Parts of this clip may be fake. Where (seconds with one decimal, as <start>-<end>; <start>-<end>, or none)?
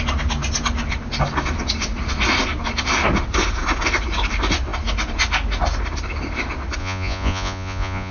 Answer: 6.8-8.1